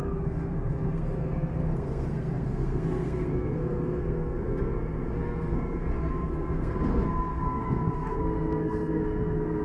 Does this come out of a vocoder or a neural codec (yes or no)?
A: yes